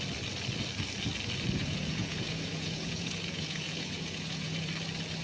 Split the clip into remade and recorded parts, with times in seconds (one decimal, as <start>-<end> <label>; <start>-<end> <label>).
0.0-1.6 recorded; 1.6-4.7 remade; 4.7-5.2 recorded

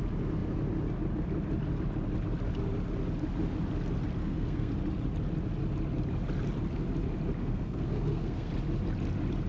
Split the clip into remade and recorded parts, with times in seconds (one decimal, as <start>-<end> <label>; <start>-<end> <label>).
0.0-4.2 recorded; 4.2-4.7 remade; 4.7-7.4 recorded; 7.4-8.5 remade; 8.5-9.5 recorded

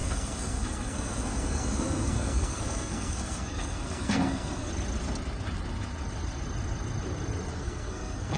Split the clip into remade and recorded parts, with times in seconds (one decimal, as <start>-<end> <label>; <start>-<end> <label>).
0.0-4.7 remade; 4.7-7.5 recorded; 7.5-8.4 remade

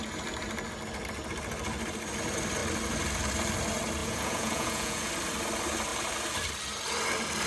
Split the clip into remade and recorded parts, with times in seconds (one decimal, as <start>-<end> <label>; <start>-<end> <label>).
0.0-4.0 recorded; 4.0-5.1 remade; 5.1-7.5 recorded